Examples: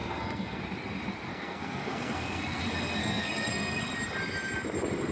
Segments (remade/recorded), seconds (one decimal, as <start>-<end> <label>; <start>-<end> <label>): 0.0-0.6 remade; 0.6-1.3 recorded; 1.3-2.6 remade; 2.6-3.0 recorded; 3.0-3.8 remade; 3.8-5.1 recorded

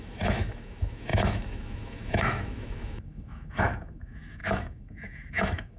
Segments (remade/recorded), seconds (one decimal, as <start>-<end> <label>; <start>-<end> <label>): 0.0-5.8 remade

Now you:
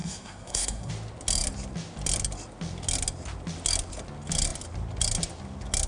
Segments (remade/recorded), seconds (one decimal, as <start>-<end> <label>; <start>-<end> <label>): 0.0-0.9 remade; 0.9-5.9 recorded

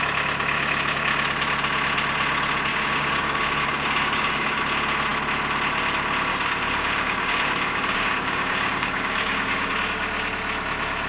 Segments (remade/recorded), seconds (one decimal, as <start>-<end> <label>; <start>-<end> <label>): 0.0-2.7 recorded; 2.7-4.6 remade; 4.6-6.3 recorded; 6.3-9.7 remade; 9.7-11.1 recorded

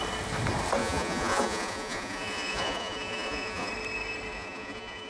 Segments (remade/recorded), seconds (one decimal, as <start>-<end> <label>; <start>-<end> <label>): 0.0-0.8 recorded; 0.8-3.7 remade; 3.7-4.3 recorded; 4.3-5.1 remade

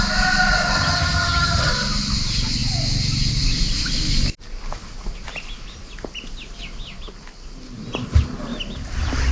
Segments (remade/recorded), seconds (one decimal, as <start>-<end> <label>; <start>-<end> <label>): 0.0-0.8 recorded; 0.8-1.7 remade; 1.7-9.3 recorded

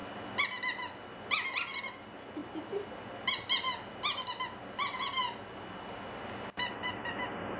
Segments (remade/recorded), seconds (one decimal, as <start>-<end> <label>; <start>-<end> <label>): 0.0-7.6 recorded